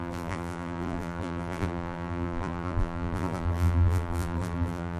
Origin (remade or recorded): remade